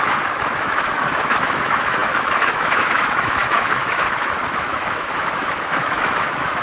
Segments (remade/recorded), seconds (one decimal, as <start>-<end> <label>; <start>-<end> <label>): 0.0-6.6 remade